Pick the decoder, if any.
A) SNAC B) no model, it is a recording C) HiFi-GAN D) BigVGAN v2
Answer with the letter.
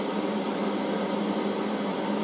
B